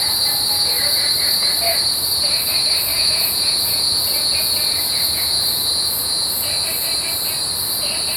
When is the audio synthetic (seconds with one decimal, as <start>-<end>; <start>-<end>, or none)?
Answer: 2.9-6.5